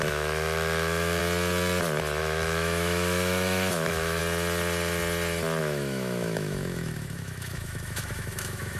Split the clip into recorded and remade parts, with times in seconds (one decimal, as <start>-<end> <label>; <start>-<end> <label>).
0.0-1.2 remade; 1.2-2.2 recorded; 2.2-4.2 remade; 4.2-5.6 recorded; 5.6-8.8 remade

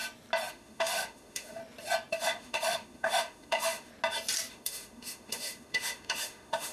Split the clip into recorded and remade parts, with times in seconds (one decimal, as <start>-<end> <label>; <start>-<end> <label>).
0.0-0.5 recorded; 0.5-1.6 remade; 1.6-2.1 recorded; 2.1-3.9 remade; 3.9-4.5 recorded; 4.5-6.7 remade

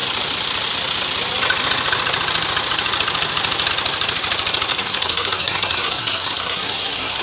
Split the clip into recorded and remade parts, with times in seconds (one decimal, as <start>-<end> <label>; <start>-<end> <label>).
0.0-4.7 recorded; 4.7-7.2 remade

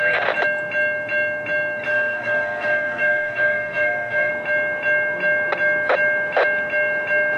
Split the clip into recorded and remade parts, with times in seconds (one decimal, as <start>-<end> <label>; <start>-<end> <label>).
0.0-1.9 recorded; 1.9-4.3 remade; 4.3-7.4 recorded

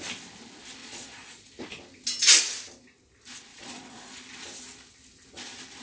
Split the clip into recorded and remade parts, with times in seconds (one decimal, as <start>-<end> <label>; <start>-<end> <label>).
0.0-0.8 recorded; 0.8-1.5 remade; 1.5-3.5 recorded; 3.5-4.2 remade; 4.2-5.8 recorded

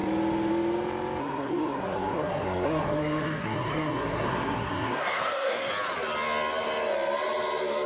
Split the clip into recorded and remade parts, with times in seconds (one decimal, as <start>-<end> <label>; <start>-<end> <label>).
0.0-1.2 recorded; 1.2-5.7 remade; 5.7-7.9 recorded